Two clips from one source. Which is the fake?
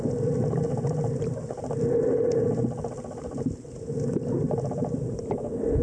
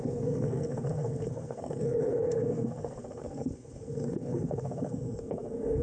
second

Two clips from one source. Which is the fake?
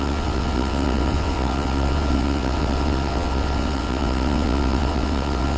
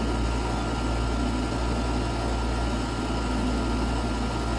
first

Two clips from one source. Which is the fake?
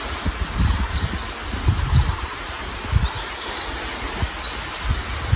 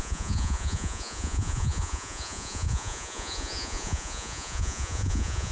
second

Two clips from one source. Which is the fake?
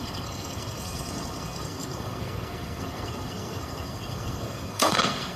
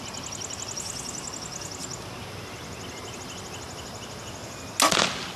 first